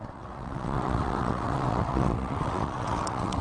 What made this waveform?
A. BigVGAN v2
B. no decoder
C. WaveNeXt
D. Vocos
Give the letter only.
C